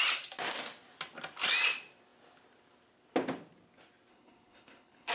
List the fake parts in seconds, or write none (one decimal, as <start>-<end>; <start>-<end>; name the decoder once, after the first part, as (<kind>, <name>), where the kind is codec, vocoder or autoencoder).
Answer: 4.1-5.1 (codec, HILCodec)